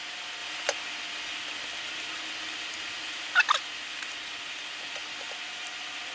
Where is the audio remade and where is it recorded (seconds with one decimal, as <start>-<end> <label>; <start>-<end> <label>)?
0.0-6.1 recorded